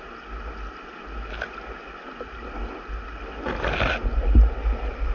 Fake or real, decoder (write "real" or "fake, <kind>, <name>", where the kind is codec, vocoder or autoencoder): real